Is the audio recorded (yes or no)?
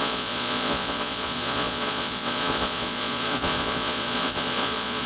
no